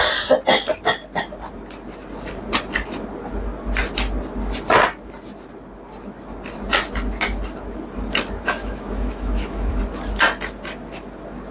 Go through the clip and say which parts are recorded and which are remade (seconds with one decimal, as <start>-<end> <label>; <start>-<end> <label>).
0.0-8.6 recorded; 8.6-9.8 remade; 9.8-11.5 recorded